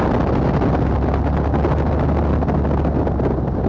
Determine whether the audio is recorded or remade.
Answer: recorded